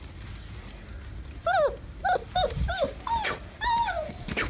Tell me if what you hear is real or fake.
real